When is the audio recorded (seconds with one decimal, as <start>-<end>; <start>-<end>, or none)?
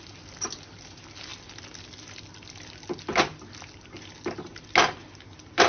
0.0-5.7